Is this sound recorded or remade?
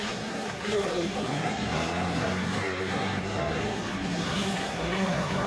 remade